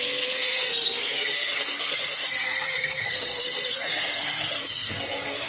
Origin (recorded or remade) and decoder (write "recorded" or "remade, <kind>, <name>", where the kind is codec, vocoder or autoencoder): remade, codec, SNAC